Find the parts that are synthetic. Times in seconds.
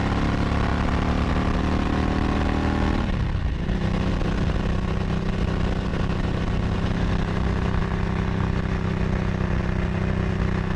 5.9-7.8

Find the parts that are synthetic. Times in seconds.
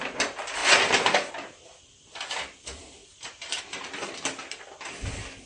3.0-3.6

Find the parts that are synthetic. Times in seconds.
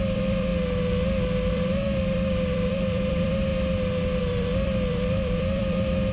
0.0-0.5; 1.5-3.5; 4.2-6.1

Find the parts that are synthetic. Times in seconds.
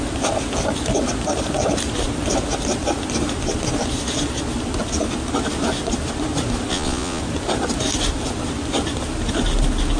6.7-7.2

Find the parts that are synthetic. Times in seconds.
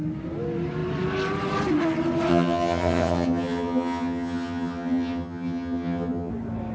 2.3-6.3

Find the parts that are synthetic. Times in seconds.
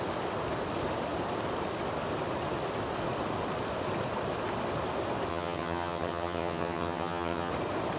5.3-7.5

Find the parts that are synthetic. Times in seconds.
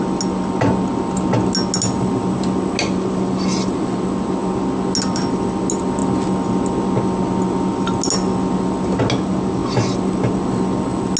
none